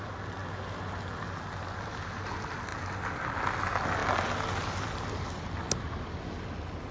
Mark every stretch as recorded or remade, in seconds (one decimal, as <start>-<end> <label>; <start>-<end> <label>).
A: 0.0-6.9 recorded